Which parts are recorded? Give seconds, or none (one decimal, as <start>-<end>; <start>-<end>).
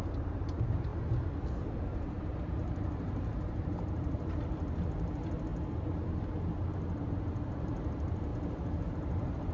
0.9-1.7; 5.5-7.0; 8.3-8.9